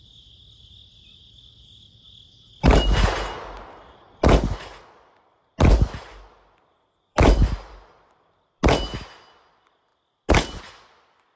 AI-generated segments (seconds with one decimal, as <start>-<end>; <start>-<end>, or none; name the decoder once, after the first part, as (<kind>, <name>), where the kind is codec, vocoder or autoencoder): none